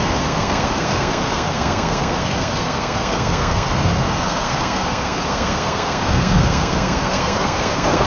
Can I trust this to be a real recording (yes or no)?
no